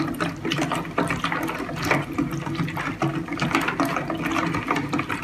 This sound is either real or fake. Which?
real